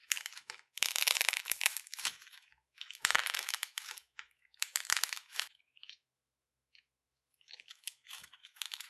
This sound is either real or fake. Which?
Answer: fake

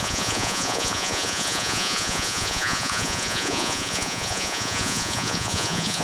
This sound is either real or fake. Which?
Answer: fake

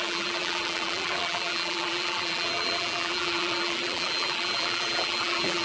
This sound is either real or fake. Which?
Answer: fake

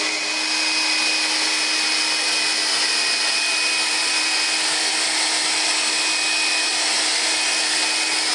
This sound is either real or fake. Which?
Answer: real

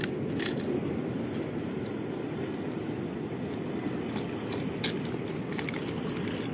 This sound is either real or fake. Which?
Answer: real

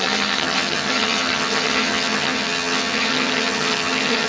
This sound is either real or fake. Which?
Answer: fake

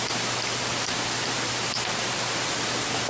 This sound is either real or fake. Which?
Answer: fake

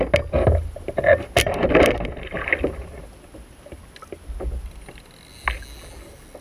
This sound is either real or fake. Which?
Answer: real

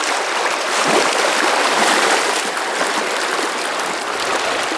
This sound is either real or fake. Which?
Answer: real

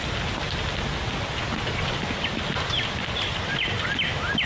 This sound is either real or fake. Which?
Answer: real